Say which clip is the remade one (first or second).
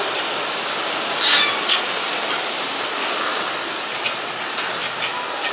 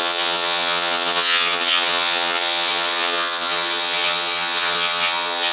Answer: second